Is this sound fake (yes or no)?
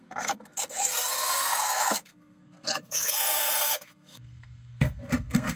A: yes